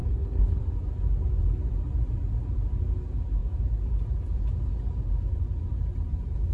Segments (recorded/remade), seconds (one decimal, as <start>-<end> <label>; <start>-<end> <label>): 0.0-0.6 remade; 0.6-6.5 recorded